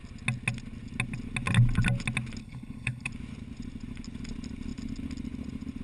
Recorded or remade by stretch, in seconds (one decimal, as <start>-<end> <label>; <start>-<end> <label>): 0.0-2.4 recorded; 2.4-3.1 remade; 3.1-5.8 recorded